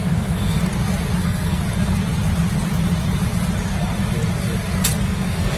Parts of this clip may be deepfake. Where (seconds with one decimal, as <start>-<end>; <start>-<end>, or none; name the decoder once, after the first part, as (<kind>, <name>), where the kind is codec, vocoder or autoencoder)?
0.0-0.6 (codec, SNAC); 1.2-1.6; 5.0-5.6